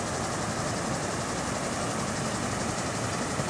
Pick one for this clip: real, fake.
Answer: real